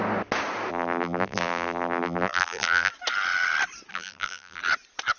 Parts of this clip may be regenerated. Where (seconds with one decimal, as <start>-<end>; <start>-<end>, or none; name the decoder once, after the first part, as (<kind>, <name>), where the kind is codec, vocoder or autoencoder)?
0.7-2.9 (vocoder, BigVGAN v2); 3.9-4.6